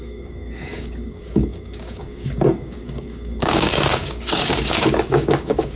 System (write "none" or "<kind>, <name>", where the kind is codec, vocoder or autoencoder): codec, DAC